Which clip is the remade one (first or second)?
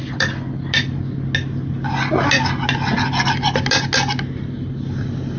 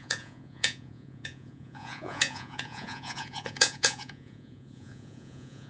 second